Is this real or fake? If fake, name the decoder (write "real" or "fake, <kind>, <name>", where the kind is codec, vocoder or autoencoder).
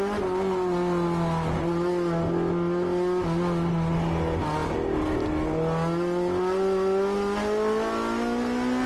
real